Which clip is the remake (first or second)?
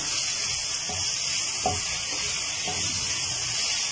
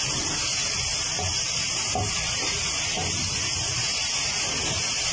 second